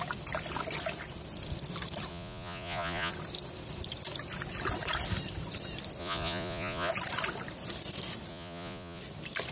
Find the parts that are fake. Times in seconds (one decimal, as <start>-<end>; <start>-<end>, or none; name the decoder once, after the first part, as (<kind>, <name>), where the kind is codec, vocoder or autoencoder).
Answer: 2.1-3.1 (vocoder, Vocos); 6.0-6.9; 8.3-9.0